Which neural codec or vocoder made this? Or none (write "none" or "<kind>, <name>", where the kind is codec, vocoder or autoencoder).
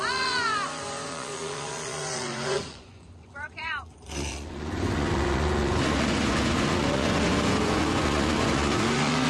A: vocoder, Vocos